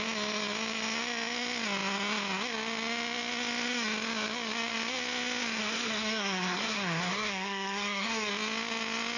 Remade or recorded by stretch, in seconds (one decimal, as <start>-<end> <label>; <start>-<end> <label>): 0.0-5.6 recorded; 5.6-8.3 remade; 8.3-9.2 recorded